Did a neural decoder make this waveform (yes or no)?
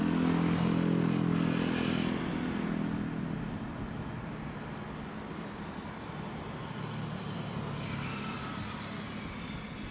no